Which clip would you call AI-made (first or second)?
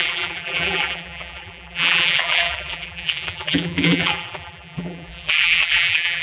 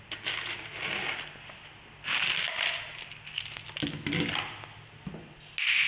first